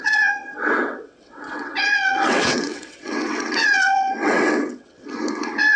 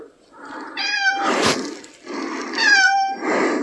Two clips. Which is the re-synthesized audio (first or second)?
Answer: first